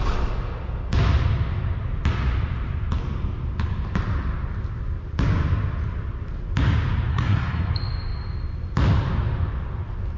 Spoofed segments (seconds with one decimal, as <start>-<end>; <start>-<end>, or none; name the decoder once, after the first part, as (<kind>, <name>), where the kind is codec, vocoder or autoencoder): 7.1-7.7 (codec, SNAC)